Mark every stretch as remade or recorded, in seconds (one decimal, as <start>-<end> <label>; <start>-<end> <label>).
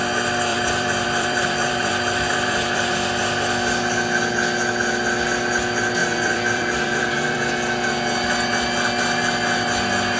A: 0.0-0.5 recorded; 0.5-2.9 remade; 2.9-6.0 recorded; 6.0-7.5 remade; 7.5-10.2 recorded